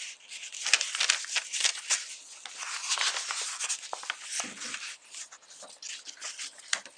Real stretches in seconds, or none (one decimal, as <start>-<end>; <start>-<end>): 0.0-7.0